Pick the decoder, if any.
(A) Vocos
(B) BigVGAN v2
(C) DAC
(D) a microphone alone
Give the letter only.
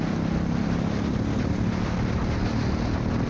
D